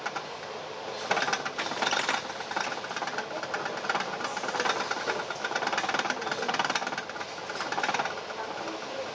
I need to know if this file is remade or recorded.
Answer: recorded